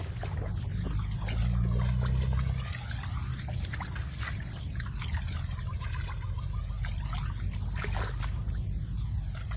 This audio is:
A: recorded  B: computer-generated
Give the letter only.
A